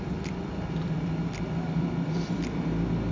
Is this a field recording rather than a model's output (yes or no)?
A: no